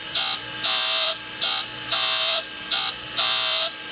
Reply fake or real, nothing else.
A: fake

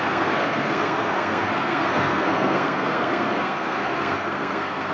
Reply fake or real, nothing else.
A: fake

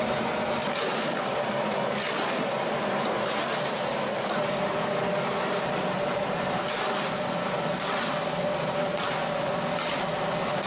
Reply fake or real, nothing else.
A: real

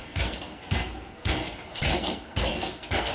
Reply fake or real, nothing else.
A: fake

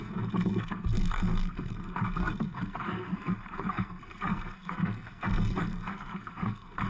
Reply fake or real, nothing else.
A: fake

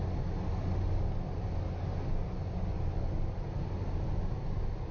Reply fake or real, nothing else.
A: real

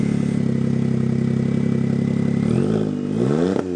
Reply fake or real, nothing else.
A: real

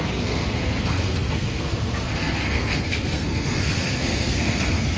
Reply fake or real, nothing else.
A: fake